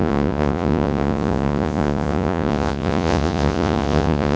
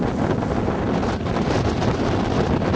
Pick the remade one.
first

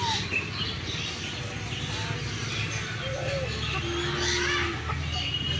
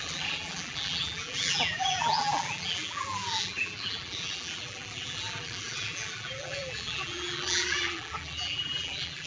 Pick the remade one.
second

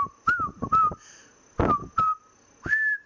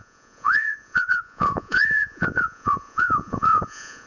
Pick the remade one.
second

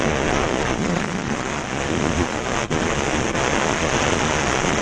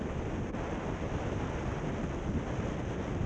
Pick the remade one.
first